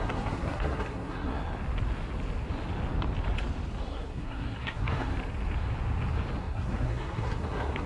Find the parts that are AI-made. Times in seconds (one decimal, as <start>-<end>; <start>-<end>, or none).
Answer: 0.0-1.4; 3.8-5.1; 6.4-7.9